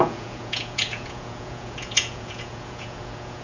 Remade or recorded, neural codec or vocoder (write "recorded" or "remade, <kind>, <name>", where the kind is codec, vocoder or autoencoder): remade, vocoder, Vocos